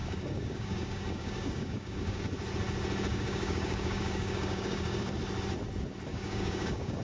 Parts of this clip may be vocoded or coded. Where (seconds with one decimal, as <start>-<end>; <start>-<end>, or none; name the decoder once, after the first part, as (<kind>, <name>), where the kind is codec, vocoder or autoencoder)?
0.0-2.2 (codec, DAC); 3.1-5.1; 6.1-7.0